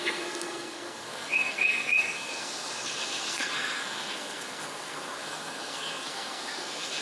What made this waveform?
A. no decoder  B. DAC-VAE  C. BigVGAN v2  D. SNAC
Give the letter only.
D